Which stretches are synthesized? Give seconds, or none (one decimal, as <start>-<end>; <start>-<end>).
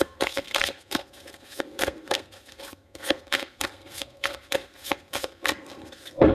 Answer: 0.0-6.3